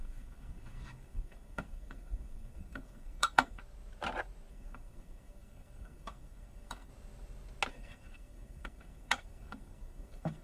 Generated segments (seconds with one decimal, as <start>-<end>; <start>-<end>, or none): 0.0-3.6; 4.5-6.9; 7.7-10.4